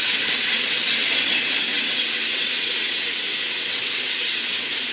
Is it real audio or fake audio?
fake